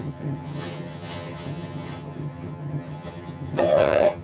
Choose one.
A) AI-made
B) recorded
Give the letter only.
A